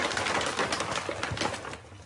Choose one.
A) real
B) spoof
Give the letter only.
A